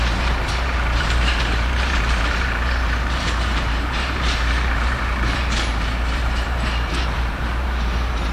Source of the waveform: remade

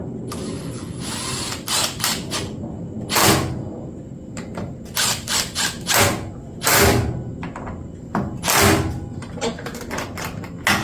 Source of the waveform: recorded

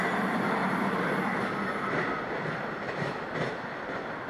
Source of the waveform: recorded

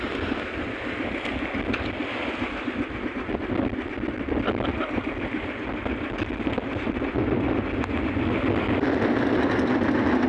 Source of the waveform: recorded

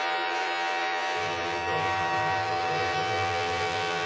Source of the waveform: remade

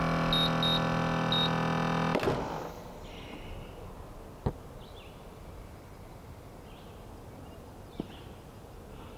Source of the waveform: recorded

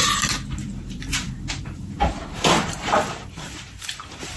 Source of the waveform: remade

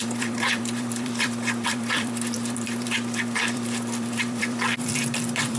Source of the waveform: remade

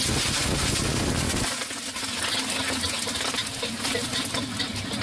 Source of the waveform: recorded